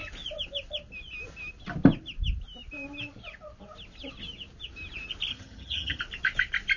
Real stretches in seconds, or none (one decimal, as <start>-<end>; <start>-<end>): 0.0-5.3; 6.0-6.8